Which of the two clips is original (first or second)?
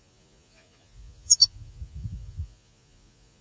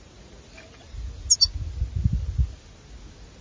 second